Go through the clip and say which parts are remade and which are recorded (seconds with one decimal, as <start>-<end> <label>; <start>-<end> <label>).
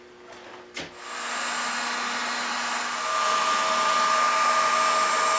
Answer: 0.0-5.4 recorded